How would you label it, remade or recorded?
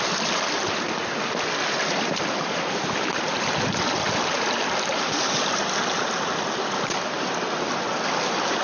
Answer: recorded